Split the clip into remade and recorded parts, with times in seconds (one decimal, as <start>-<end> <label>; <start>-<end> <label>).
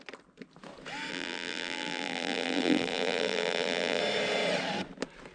0.0-1.1 recorded; 1.1-4.0 remade; 4.0-5.3 recorded